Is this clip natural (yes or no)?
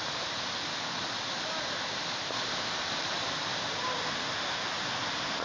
yes